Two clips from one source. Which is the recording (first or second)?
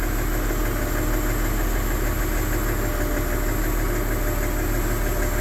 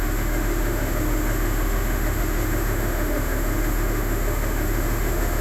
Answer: first